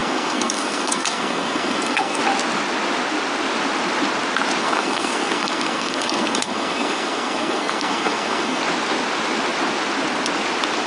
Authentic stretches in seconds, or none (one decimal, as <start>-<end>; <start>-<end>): 2.2-4.6; 8.6-10.9